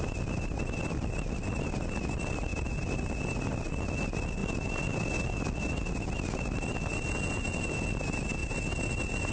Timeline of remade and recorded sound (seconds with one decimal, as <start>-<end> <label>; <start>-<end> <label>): 0.0-9.3 recorded